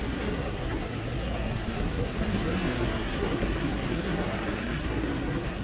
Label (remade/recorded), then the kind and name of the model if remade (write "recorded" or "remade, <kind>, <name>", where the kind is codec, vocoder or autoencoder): remade, codec, SNAC